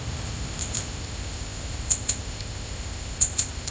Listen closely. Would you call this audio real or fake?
fake